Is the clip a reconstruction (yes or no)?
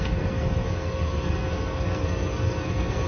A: yes